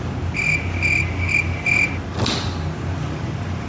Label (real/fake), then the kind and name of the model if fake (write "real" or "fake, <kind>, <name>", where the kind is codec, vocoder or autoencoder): real